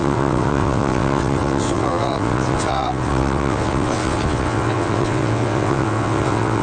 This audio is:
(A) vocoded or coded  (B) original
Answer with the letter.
A